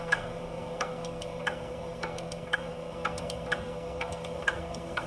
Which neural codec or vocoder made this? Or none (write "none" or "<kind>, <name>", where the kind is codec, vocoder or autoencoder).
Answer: codec, SNAC